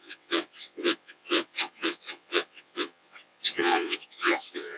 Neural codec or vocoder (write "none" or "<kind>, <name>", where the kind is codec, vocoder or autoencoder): vocoder, WaveNeXt